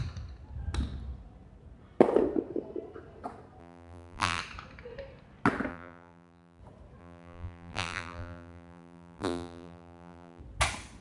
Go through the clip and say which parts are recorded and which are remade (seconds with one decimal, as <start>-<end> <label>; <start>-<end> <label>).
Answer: 0.0-3.6 recorded; 3.6-4.4 remade; 4.4-5.7 recorded; 5.7-6.6 remade; 6.6-7.0 recorded; 7.0-10.4 remade; 10.4-11.0 recorded